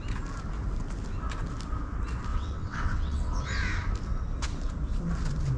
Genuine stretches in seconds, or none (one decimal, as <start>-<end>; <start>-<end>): 0.0-2.3; 3.4-5.6